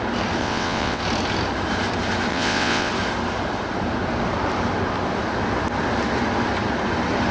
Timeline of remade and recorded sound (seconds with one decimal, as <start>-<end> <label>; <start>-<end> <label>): 0.0-0.4 recorded; 0.4-1.0 remade; 1.0-2.3 recorded; 2.3-2.9 remade; 2.9-7.3 recorded

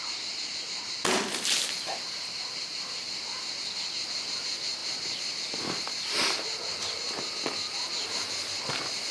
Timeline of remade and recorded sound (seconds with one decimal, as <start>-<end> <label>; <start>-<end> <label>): 0.0-9.1 recorded

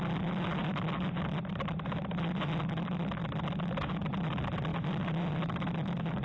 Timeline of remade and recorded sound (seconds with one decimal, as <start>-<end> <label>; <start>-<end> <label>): 0.0-4.7 recorded; 4.7-5.4 remade; 5.4-6.2 recorded

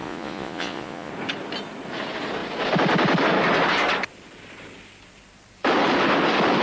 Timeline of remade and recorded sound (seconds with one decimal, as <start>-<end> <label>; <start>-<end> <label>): 0.0-1.1 remade; 1.1-6.6 recorded

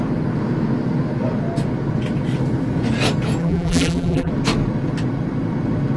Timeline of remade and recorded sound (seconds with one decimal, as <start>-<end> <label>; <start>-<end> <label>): 0.0-3.4 recorded; 3.4-4.3 remade; 4.3-6.0 recorded

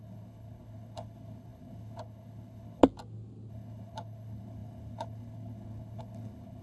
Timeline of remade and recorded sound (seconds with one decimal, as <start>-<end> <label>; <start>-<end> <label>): 0.0-2.8 remade; 2.8-3.5 recorded; 3.5-6.6 remade

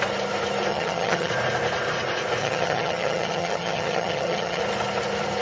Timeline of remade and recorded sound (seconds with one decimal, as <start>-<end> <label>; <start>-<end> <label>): 0.0-0.7 recorded; 0.7-1.3 remade; 1.3-2.4 recorded; 2.4-4.6 remade; 4.6-5.4 recorded

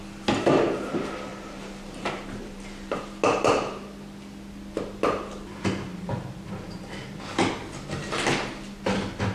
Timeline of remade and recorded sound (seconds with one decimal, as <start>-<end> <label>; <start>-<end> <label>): 0.0-1.3 recorded; 1.3-3.0 remade; 3.0-9.3 recorded